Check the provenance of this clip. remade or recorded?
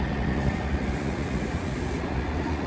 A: remade